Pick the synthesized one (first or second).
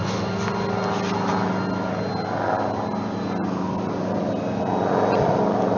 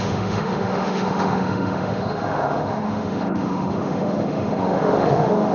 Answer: second